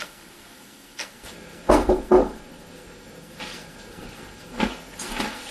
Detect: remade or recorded remade